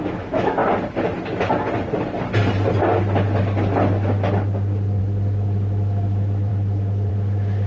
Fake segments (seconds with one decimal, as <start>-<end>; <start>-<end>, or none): 0.0-0.6; 5.0-7.7